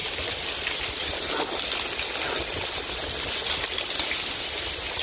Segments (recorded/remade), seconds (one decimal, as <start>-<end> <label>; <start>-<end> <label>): 0.0-5.0 recorded